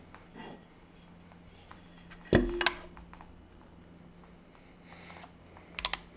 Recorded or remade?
recorded